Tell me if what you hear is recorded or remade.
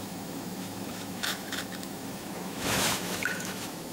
remade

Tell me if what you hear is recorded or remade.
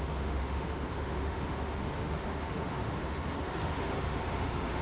remade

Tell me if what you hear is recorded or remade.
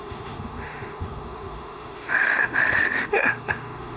remade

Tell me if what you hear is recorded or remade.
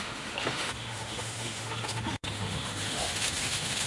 remade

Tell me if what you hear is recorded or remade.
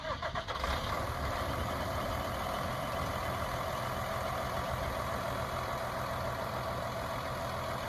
recorded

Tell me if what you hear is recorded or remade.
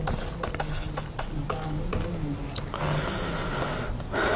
recorded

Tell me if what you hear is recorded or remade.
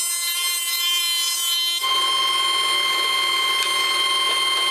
recorded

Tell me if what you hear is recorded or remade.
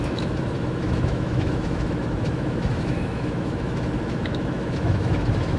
remade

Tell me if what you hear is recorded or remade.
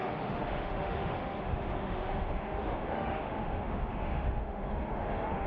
remade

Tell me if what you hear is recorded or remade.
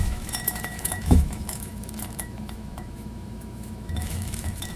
remade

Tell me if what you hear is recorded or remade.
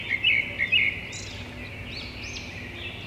recorded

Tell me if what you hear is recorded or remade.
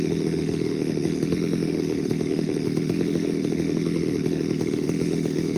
remade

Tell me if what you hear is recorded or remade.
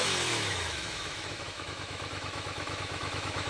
remade